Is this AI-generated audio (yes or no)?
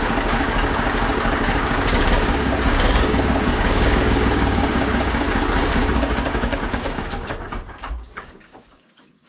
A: yes